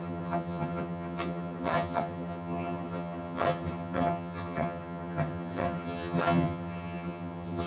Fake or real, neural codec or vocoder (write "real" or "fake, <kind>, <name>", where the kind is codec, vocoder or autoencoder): fake, vocoder, HiFi-GAN